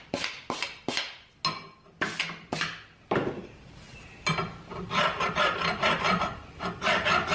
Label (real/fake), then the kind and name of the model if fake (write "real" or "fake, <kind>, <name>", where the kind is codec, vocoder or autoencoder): real